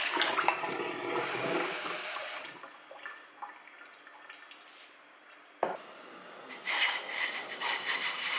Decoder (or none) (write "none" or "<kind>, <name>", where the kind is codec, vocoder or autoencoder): vocoder, BigVGAN v2